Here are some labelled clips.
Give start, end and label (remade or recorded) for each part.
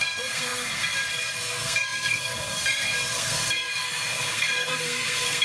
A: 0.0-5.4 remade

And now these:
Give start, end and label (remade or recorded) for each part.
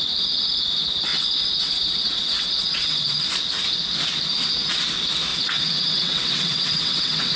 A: 0.0-1.1 recorded; 1.1-3.1 remade; 3.1-5.3 recorded; 5.3-7.4 remade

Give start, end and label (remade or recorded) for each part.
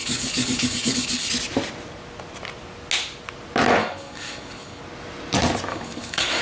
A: 0.0-1.3 remade; 1.3-3.8 recorded; 3.8-4.8 remade; 4.8-5.7 recorded; 5.7-6.4 remade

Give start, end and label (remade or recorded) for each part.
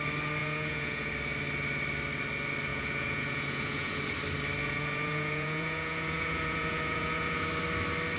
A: 0.0-0.4 recorded; 0.4-1.1 remade; 1.1-2.7 recorded; 2.7-4.0 remade; 4.0-4.6 recorded; 4.6-7.5 remade; 7.5-8.2 recorded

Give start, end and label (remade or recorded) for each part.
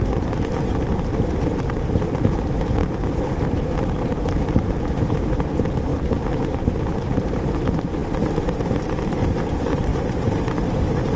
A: 0.0-11.2 remade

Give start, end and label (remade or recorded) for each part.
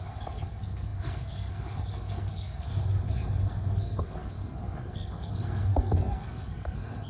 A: 0.0-7.1 remade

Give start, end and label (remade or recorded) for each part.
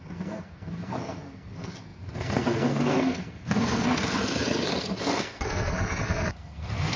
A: 0.0-7.0 remade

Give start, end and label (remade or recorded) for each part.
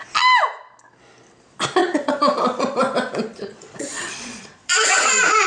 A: 0.0-1.8 recorded; 1.8-2.8 remade; 2.8-3.3 recorded; 3.3-5.5 remade